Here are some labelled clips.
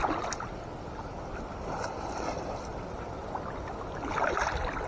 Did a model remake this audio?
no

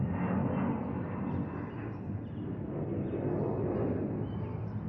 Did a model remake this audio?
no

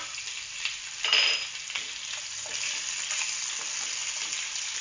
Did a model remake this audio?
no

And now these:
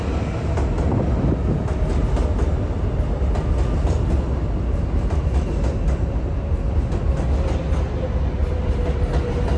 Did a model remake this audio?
no